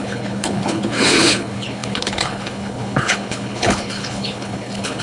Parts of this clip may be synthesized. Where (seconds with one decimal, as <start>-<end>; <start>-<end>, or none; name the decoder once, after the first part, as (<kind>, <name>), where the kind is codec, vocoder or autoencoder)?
0.0-5.0 (codec, HILCodec)